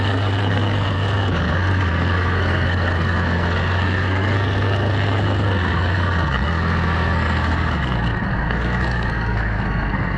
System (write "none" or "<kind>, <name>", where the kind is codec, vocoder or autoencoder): codec, SNAC